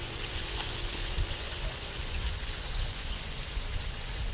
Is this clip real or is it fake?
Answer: fake